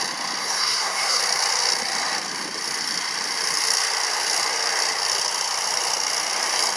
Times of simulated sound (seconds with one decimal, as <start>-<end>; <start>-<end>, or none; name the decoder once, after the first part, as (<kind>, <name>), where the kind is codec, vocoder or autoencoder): 0.4-1.2 (codec, SNAC)